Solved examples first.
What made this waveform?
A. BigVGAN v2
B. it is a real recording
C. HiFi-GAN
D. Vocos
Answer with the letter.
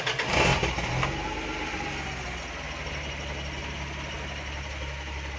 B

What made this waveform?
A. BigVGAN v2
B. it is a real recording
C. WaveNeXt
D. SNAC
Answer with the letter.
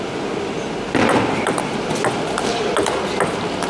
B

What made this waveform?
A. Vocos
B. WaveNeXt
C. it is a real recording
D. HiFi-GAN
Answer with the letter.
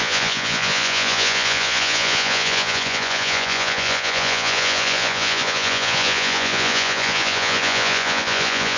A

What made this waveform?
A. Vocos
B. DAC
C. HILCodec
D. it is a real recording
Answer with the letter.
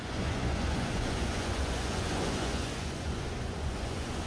A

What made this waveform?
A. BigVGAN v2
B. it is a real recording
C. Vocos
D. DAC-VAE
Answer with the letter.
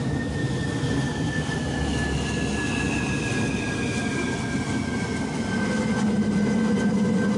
B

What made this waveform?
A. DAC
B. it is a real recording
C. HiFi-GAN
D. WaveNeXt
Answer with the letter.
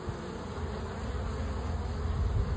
B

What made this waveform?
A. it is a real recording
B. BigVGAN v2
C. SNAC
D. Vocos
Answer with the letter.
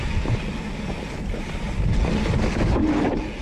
A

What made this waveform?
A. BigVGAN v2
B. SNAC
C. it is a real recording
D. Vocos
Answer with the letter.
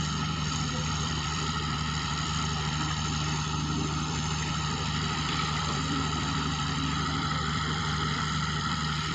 A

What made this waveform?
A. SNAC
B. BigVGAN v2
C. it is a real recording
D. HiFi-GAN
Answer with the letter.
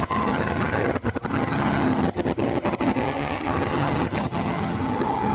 D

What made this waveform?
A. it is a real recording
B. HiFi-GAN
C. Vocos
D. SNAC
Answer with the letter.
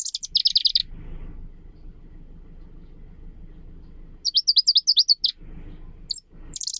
A